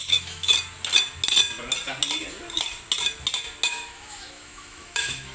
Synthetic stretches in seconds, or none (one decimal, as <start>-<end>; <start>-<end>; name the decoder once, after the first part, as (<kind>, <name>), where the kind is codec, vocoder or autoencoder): 0.0-0.5 (autoencoder, DAC-VAE); 3.7-5.3